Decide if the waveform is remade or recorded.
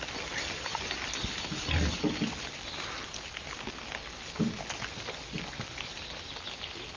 recorded